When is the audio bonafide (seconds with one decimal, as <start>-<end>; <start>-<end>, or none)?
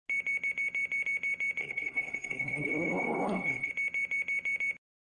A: 0.0-1.6; 3.7-5.2